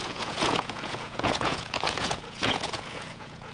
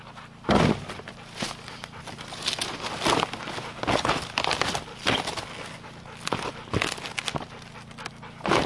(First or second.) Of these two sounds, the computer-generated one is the first